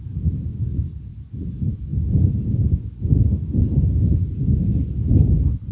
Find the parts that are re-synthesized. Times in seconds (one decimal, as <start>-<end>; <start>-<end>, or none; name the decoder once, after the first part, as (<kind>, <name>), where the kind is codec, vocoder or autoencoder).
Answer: none